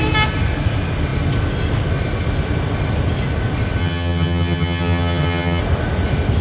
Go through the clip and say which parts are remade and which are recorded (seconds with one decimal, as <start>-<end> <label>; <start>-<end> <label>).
0.0-3.8 recorded; 3.8-5.6 remade; 5.6-6.4 recorded